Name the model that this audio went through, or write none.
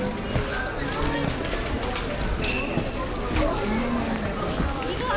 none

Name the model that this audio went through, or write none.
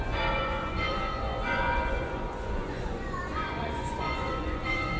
vocoder, Vocos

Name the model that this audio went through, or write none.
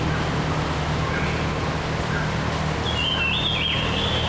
none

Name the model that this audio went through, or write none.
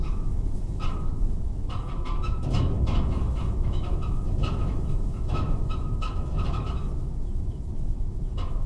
autoencoder, DAC-VAE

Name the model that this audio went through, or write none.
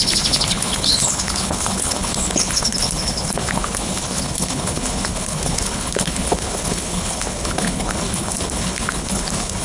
codec, HILCodec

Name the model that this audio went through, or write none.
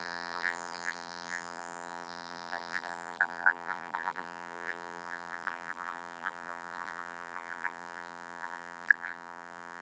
vocoder, BigVGAN v2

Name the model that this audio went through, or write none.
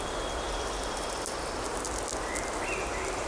none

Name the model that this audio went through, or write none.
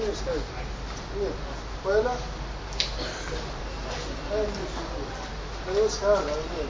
none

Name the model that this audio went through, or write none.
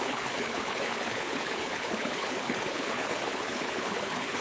codec, HILCodec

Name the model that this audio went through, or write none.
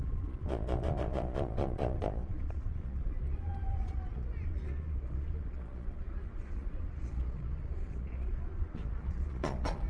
vocoder, Vocos